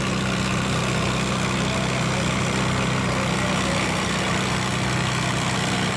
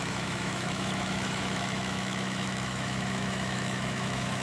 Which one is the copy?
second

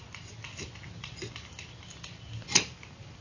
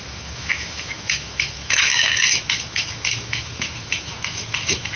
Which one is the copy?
second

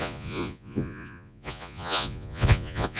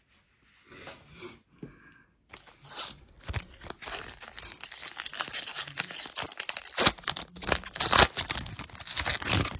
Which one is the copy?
first